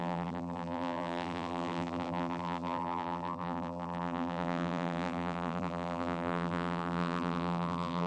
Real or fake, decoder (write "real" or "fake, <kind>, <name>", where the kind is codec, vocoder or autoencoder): fake, vocoder, BigVGAN v2